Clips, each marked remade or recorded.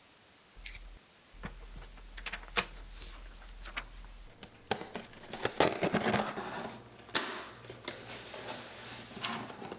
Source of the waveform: recorded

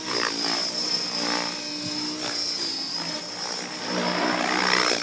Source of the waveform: recorded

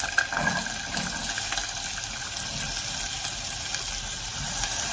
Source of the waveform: recorded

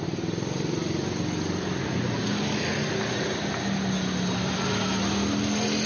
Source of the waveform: recorded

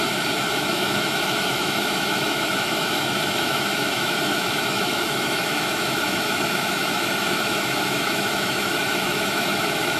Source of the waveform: remade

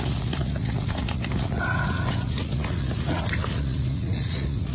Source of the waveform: remade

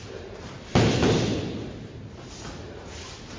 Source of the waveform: recorded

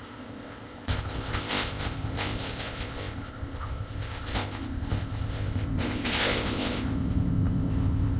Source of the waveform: remade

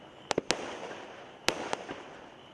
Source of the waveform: recorded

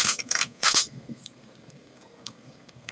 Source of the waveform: remade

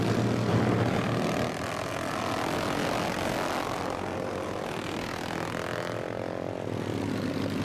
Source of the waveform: recorded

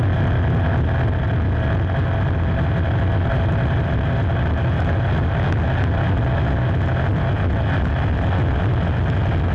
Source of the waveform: recorded